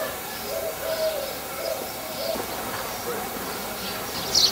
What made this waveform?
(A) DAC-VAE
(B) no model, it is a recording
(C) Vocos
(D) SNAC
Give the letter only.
B